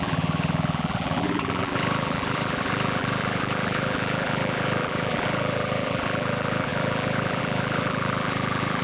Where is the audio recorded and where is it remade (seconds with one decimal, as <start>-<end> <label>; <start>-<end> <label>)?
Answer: 0.0-8.8 remade